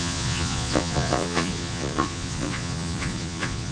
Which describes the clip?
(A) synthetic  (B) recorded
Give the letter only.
A